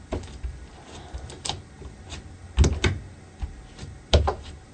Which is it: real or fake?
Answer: real